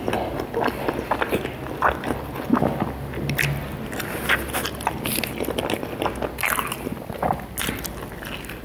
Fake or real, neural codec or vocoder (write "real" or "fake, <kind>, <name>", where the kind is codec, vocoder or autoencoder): real